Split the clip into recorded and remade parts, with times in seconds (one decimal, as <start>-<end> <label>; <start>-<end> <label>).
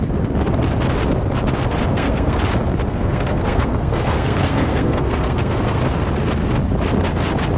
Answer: 0.0-1.9 recorded; 1.9-2.4 remade; 2.4-2.9 recorded; 2.9-5.8 remade; 5.8-7.6 recorded